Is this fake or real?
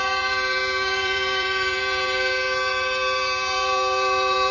fake